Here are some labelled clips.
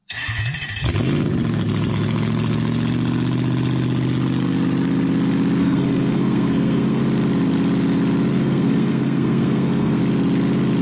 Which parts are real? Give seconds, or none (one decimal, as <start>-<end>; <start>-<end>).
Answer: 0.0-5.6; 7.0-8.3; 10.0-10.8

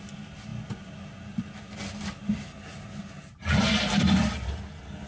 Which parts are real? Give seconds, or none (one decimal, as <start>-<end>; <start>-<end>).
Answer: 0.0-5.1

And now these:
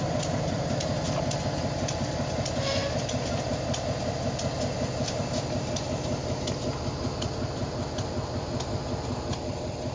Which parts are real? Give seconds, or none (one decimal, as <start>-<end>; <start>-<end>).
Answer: 0.0-9.9

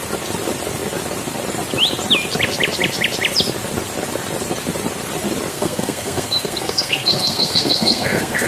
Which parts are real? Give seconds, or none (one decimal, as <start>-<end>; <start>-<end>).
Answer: 0.0-5.5